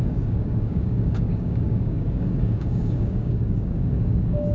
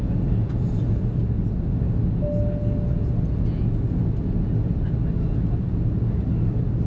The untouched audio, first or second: second